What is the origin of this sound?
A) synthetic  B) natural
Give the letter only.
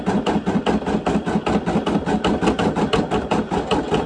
B